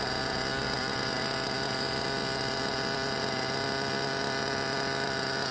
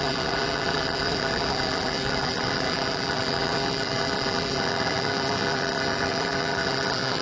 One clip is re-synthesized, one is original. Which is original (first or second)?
first